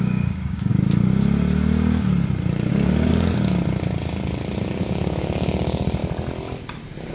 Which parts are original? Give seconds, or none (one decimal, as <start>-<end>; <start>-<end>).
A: 0.7-2.7; 3.1-4.8; 6.0-7.1